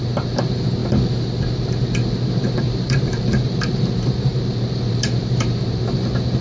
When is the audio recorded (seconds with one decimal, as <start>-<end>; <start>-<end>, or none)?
0.8-2.5